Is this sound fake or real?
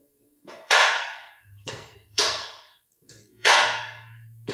fake